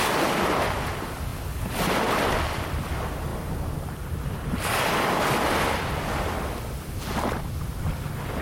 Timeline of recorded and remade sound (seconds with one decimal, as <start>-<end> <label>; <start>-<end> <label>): 0.0-3.3 recorded; 3.3-4.6 remade; 4.6-8.4 recorded